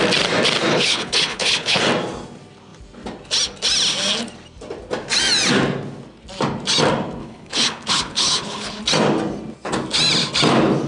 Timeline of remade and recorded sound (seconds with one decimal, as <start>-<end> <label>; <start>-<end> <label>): 0.0-0.7 recorded; 0.7-1.8 remade; 1.8-7.2 recorded; 7.2-8.8 remade; 8.8-10.9 recorded